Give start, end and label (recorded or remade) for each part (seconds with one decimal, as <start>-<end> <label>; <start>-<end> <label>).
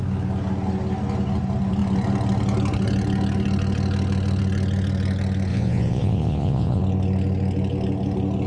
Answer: 0.0-5.5 recorded; 5.5-6.8 remade; 6.8-8.5 recorded